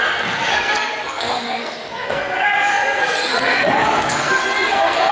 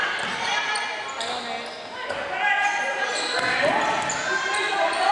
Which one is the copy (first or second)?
first